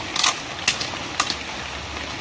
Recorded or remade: recorded